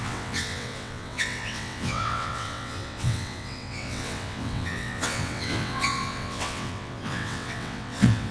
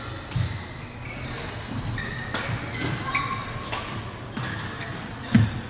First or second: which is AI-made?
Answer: first